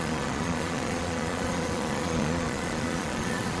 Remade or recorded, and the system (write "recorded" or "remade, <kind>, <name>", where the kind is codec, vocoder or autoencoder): remade, vocoder, Vocos